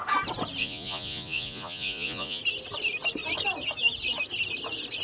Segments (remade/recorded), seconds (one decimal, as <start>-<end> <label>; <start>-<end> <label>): 0.0-0.6 recorded; 0.6-2.4 remade; 2.4-5.0 recorded